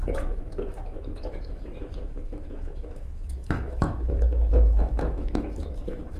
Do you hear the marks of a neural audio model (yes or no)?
yes